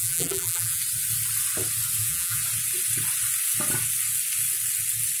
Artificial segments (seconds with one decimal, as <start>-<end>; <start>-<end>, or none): 0.0-0.8; 2.0-2.4